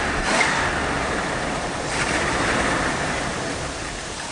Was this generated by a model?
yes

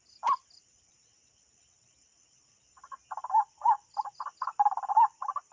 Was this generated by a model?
no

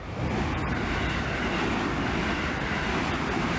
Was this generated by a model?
no